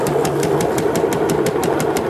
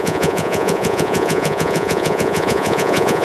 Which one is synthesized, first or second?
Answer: second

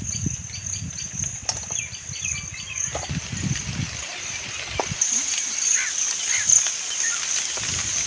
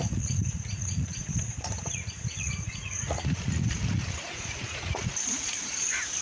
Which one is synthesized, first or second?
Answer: second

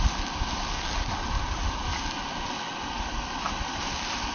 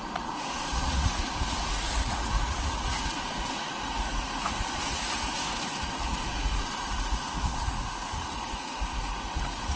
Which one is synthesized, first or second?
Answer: second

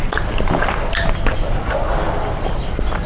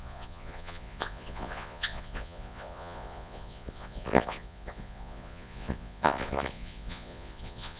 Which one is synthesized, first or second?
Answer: second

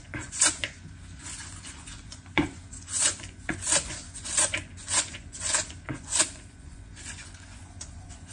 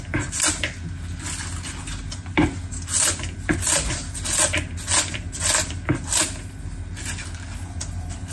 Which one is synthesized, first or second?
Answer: first